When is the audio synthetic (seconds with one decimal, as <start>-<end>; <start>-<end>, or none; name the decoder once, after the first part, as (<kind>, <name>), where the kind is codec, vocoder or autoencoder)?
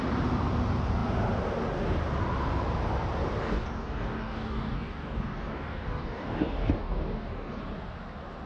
3.4-7.6 (codec, DAC)